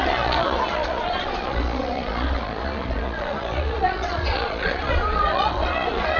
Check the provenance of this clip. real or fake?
fake